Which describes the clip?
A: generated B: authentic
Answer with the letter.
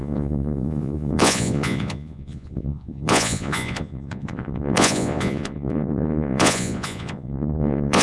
A